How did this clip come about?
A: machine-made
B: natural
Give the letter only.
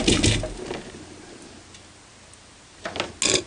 B